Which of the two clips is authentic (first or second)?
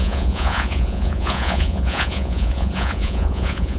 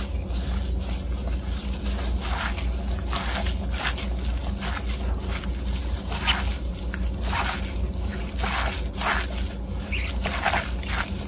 second